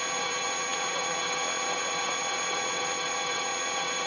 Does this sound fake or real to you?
fake